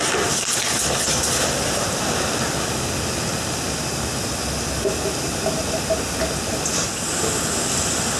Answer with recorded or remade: recorded